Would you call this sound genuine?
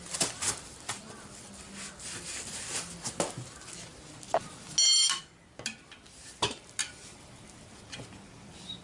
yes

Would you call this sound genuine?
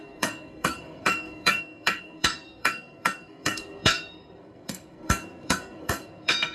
no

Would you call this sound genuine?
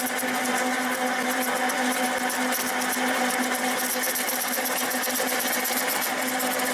yes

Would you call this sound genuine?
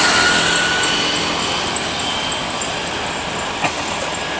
yes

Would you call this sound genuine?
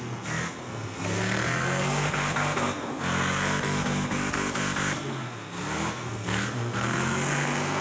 no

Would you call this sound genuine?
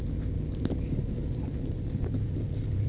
yes